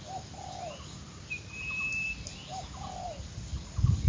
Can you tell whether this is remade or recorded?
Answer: recorded